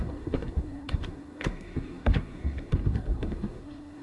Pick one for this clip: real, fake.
fake